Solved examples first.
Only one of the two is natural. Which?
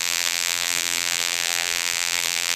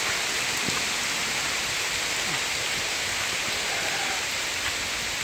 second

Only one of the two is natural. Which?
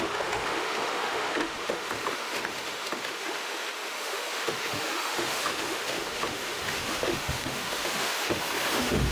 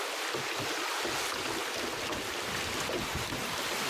second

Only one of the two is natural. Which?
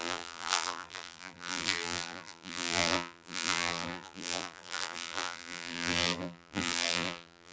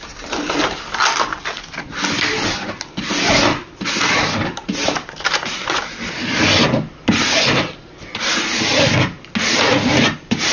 second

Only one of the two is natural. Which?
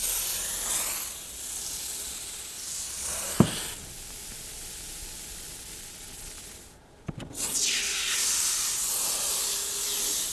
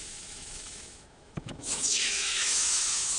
first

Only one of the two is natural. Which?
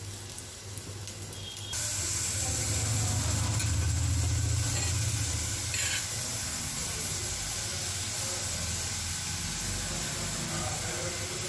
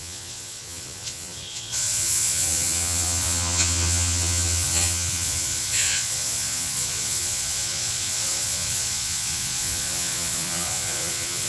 first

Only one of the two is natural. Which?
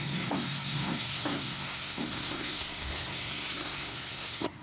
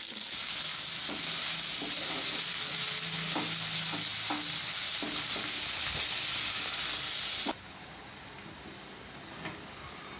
second